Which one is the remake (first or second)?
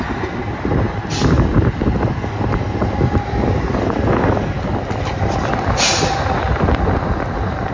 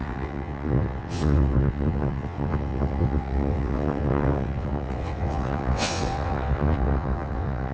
second